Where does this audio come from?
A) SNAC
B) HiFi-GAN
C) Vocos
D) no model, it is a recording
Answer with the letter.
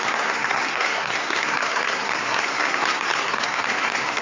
A